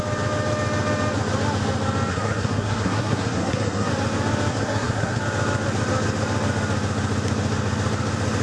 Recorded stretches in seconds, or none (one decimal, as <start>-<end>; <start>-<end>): 0.0-2.1; 3.9-4.5; 5.2-8.4